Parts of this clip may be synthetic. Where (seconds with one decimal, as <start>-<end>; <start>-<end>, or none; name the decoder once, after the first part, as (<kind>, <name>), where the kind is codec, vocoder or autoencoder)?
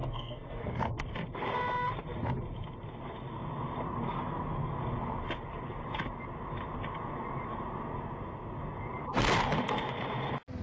0.0-1.0 (codec, SNAC)